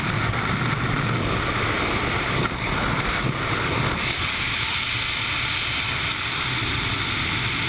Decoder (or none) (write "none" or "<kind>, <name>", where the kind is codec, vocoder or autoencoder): none